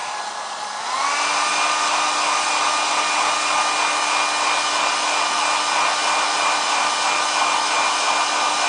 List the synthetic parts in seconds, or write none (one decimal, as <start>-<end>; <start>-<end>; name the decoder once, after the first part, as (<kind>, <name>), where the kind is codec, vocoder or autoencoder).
none